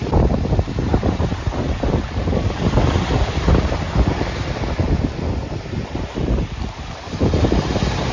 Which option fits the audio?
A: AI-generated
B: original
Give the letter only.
B